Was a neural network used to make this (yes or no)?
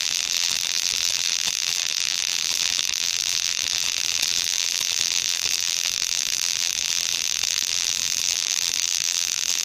yes